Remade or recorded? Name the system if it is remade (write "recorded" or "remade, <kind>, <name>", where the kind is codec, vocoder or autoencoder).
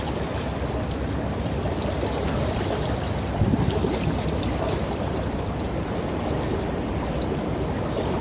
recorded